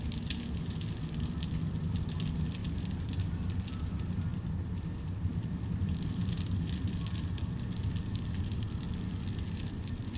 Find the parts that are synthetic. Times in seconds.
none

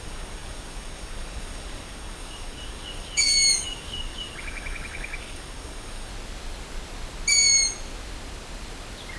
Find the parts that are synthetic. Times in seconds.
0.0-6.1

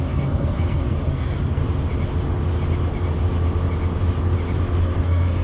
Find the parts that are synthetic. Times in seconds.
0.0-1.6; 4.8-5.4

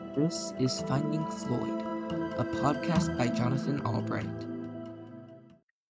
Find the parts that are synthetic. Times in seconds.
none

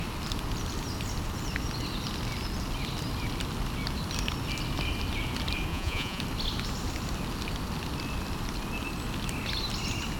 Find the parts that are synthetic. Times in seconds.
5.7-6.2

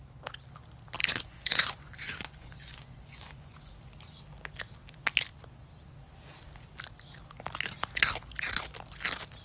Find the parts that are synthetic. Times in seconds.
1.0-3.7

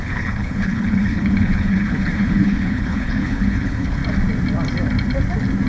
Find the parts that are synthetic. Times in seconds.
0.0-4.0

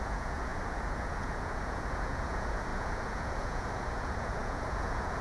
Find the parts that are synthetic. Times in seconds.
0.0-5.2